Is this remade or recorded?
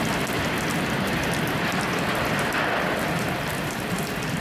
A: recorded